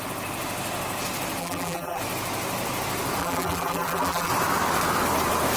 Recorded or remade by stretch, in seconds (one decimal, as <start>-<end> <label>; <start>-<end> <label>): 0.0-1.4 recorded; 1.4-2.0 remade; 2.0-3.2 recorded; 3.2-4.3 remade; 4.3-5.6 recorded